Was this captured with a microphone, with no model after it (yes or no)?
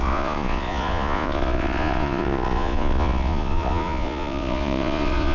no